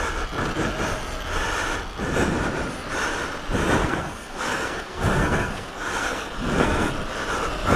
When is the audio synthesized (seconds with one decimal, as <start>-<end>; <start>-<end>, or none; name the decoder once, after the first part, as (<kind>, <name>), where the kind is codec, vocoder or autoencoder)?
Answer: 3.8-6.9 (codec, SNAC)